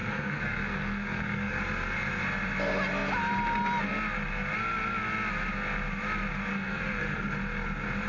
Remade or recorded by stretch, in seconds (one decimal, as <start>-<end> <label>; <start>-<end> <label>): 0.0-1.6 remade; 1.6-6.5 recorded; 6.5-7.3 remade; 7.3-8.1 recorded